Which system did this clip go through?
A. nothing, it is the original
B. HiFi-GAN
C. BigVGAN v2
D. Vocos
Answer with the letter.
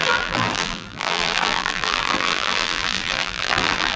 C